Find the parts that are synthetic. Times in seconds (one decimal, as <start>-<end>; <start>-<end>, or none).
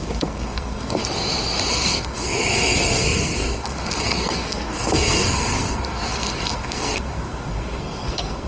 0.0-1.0; 1.7-8.5